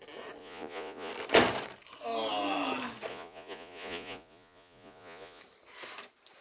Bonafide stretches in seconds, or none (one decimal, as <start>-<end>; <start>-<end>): 0.0-0.4; 1.1-3.1; 5.4-6.4